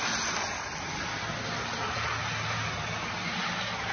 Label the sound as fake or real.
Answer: real